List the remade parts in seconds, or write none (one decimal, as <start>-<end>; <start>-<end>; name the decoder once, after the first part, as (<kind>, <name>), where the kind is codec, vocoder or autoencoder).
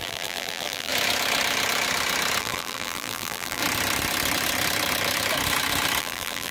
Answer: 0.0-0.9 (vocoder, BigVGAN v2); 2.4-3.6; 6.0-6.5